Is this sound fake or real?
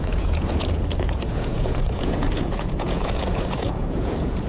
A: fake